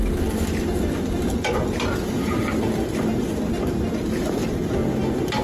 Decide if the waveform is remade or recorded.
recorded